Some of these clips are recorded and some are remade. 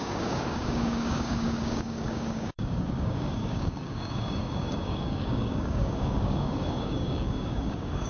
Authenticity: remade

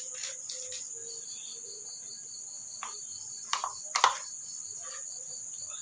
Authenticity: recorded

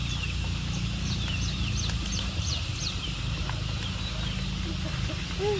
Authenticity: recorded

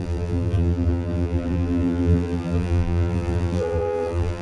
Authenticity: remade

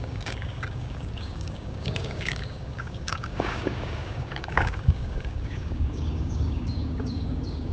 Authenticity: remade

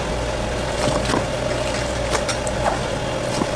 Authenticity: recorded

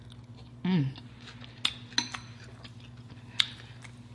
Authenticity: recorded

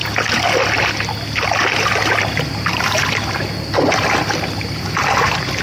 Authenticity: recorded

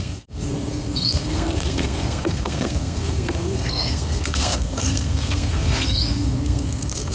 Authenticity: remade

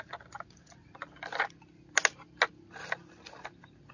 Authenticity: recorded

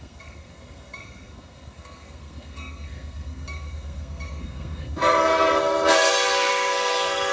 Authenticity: remade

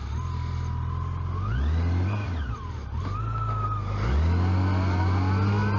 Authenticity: recorded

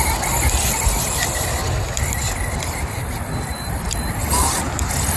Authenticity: recorded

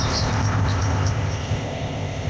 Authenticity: remade